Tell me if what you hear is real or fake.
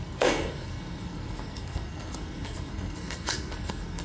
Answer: fake